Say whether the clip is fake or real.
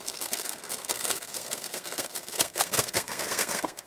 fake